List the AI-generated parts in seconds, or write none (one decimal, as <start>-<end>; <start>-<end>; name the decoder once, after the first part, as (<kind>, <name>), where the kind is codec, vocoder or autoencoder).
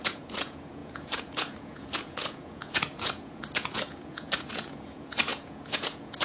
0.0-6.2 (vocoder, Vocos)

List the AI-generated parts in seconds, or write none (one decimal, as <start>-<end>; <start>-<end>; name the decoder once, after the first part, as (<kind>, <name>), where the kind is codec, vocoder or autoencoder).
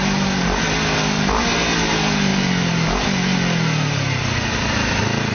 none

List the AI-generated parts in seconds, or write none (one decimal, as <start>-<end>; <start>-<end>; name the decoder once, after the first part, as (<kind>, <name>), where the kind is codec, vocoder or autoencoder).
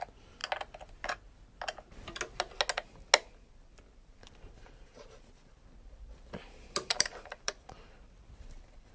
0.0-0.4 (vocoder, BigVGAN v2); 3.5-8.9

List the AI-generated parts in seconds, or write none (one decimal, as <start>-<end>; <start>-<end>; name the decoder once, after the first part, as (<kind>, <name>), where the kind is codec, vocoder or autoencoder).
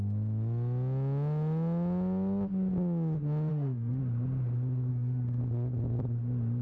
3.5-4.0 (autoencoder, DAC-VAE); 4.9-5.4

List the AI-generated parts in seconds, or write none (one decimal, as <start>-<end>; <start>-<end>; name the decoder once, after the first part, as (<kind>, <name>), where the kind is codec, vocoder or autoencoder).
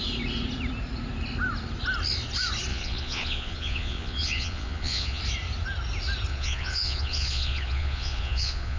2.7-5.2 (vocoder, Vocos); 6.3-8.8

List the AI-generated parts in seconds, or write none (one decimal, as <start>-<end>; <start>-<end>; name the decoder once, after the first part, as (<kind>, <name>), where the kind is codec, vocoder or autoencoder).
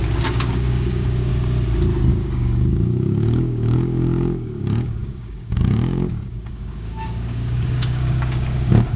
0.0-1.3 (codec, DAC); 2.1-9.0